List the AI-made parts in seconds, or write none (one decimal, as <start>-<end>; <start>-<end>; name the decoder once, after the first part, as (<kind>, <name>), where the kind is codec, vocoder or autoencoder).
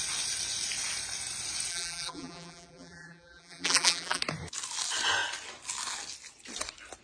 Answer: 1.7-4.2 (vocoder, BigVGAN v2)